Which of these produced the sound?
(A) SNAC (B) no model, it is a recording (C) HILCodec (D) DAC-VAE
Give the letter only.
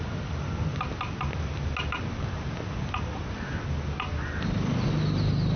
B